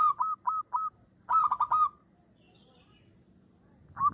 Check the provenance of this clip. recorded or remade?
recorded